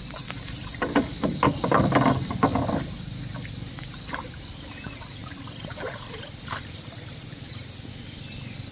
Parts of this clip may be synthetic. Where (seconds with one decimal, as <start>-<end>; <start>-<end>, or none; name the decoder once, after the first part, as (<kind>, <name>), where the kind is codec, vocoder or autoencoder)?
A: 5.2-7.9 (vocoder, BigVGAN v2)